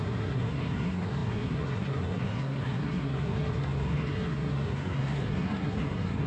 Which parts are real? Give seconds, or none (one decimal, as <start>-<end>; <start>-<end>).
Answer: none

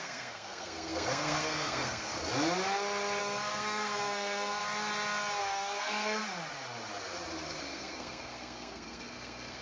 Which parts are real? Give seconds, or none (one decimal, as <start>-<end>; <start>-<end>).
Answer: 2.1-3.2; 4.6-5.4; 6.2-7.6

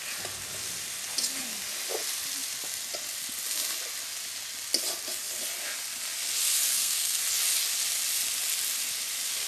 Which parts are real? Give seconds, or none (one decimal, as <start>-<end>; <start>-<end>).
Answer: 0.0-6.7; 7.2-9.5

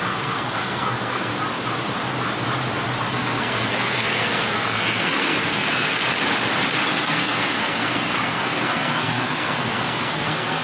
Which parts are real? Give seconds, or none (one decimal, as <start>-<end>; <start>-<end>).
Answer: 1.3-3.1; 6.0-6.9

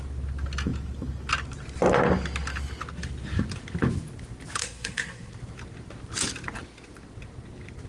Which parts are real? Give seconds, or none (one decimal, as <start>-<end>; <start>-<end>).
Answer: 0.0-4.6; 5.3-7.9

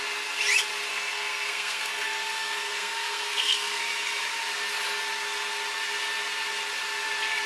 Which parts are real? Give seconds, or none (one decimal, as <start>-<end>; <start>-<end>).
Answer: 0.0-0.9; 3.8-7.5

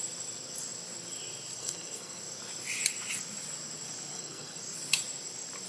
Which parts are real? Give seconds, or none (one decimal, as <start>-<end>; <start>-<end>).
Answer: 0.0-1.6; 2.2-4.1; 4.6-5.7